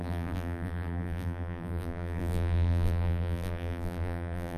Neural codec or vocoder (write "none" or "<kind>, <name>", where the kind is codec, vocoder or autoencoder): vocoder, BigVGAN v2